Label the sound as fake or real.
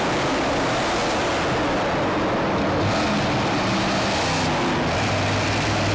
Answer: real